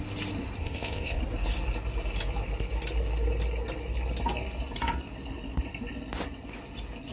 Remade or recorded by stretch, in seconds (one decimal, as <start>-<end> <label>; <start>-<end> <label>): 0.0-0.6 recorded; 0.6-1.2 remade; 1.2-7.1 recorded